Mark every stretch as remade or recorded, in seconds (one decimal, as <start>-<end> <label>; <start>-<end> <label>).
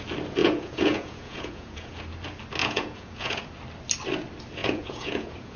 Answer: 0.0-0.4 recorded; 0.4-2.0 remade; 2.0-2.6 recorded; 2.6-3.4 remade; 3.4-4.6 recorded; 4.6-5.6 remade